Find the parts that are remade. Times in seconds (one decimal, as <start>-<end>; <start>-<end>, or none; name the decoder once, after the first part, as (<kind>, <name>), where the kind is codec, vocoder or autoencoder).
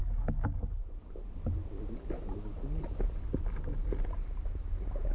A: 0.7-5.1 (vocoder, BigVGAN v2)